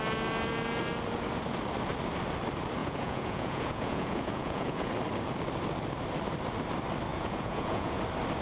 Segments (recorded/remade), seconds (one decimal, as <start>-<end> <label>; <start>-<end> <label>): 0.0-2.8 recorded; 2.8-4.9 remade; 4.9-7.1 recorded; 7.1-8.0 remade; 8.0-8.4 recorded